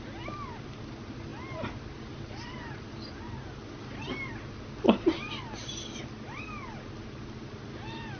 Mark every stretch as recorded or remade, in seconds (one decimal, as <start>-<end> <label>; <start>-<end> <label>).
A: 0.0-8.2 recorded